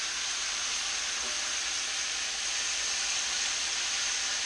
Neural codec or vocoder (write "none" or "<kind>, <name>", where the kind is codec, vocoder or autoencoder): none